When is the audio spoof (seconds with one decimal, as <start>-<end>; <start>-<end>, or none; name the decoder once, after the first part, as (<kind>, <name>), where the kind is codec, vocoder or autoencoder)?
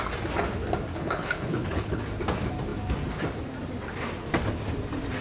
0.9-2.0 (codec, HILCodec)